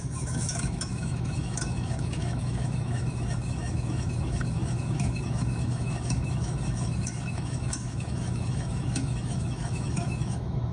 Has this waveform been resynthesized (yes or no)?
yes